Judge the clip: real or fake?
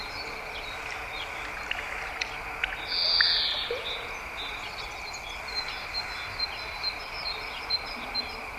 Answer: real